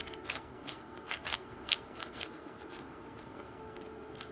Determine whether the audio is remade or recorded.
remade